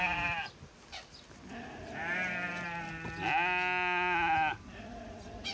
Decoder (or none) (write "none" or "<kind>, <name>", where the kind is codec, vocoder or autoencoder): none